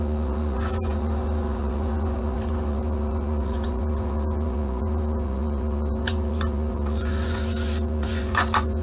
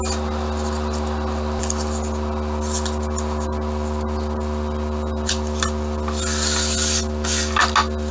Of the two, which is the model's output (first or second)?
first